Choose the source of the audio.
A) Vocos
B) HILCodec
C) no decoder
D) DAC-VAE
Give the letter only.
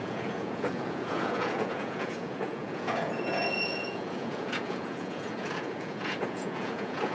A